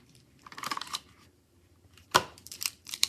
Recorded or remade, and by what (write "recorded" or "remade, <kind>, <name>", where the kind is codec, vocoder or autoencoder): remade, vocoder, BigVGAN v2